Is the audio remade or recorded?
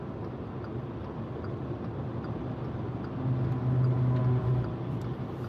recorded